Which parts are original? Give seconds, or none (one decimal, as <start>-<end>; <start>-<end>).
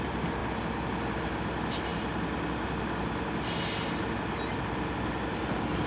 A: 0.0-5.9